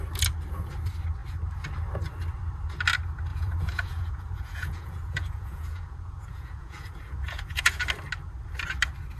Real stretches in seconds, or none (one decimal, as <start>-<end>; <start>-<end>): 0.0-3.3; 7.8-9.2